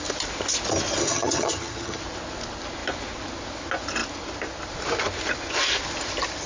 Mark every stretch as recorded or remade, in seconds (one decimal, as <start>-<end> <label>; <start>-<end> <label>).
0.0-1.0 recorded; 1.0-2.0 remade; 2.0-6.5 recorded